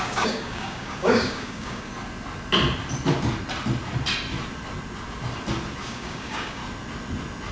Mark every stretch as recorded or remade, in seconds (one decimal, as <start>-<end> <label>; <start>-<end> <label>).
0.0-1.9 remade; 1.9-5.8 recorded; 5.8-6.6 remade; 6.6-7.5 recorded